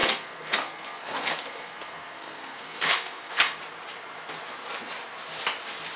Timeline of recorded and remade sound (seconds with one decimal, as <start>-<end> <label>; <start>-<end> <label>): 0.0-3.6 remade; 3.6-6.0 recorded